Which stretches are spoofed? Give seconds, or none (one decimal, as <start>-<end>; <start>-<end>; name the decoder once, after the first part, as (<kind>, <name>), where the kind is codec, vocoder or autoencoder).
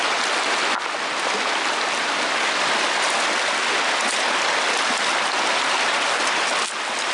none